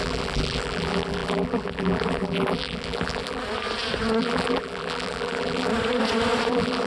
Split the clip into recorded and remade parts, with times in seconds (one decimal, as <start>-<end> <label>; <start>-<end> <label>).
0.0-3.4 remade; 3.4-4.2 recorded; 4.2-5.7 remade; 5.7-6.5 recorded; 6.5-6.9 remade